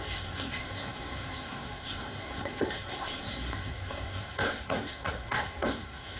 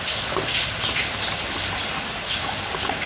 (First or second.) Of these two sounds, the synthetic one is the first